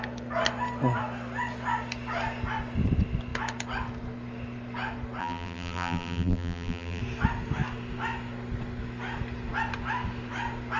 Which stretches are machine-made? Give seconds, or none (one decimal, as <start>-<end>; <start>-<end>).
5.2-7.0